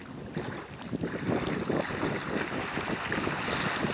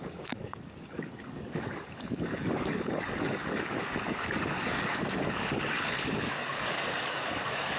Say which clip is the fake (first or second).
second